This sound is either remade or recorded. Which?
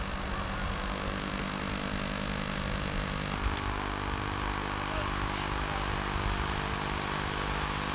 recorded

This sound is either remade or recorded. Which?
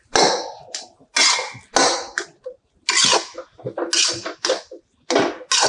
recorded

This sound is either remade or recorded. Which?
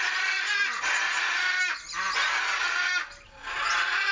recorded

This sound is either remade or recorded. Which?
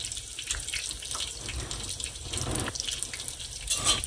recorded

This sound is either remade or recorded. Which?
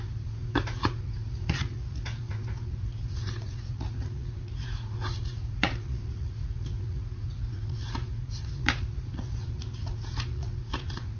remade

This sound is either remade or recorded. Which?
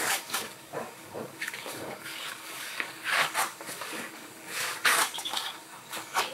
remade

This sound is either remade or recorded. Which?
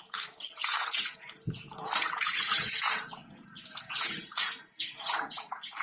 remade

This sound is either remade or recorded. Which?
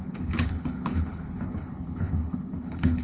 remade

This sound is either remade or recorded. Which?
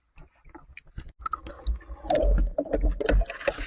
recorded